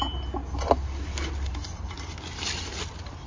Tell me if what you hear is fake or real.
real